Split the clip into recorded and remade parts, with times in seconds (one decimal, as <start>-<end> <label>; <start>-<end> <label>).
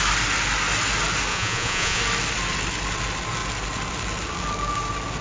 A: 0.0-1.3 recorded; 1.3-2.0 remade; 2.0-5.2 recorded